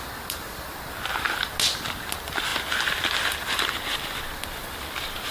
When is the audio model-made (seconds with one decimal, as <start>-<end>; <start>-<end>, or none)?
none